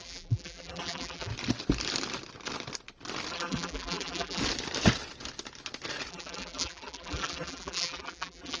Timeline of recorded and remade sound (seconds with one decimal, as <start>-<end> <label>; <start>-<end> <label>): 0.0-1.3 remade; 1.3-3.3 recorded; 3.3-4.4 remade; 4.4-6.1 recorded; 6.1-8.6 remade

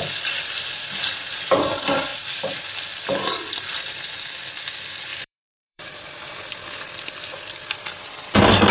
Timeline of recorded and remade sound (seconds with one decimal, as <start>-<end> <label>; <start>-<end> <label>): 0.0-2.1 recorded; 2.1-2.6 remade; 2.6-5.1 recorded; 5.1-8.7 remade